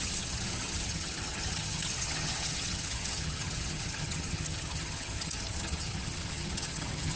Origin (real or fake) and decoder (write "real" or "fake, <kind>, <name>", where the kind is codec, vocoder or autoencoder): fake, vocoder, HiFi-GAN